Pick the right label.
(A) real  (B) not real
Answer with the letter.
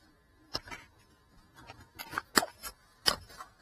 A